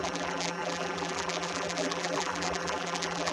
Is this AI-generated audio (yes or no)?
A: yes